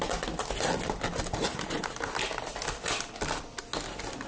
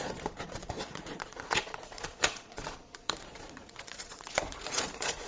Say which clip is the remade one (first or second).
second